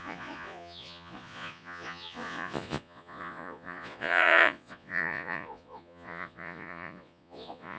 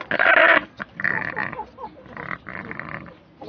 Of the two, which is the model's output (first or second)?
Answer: first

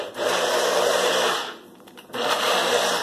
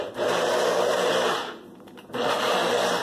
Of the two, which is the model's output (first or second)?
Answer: first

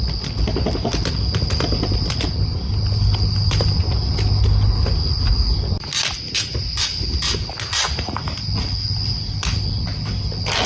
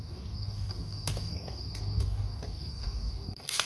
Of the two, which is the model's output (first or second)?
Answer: second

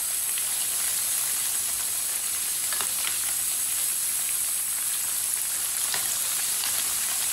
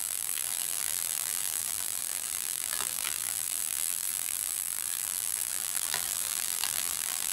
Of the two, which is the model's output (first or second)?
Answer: second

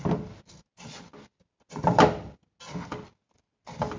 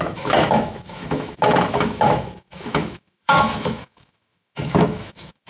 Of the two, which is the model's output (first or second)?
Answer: second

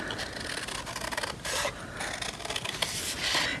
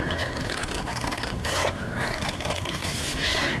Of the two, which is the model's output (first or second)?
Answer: second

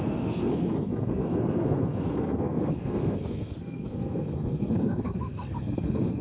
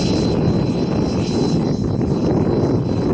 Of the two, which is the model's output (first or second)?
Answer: first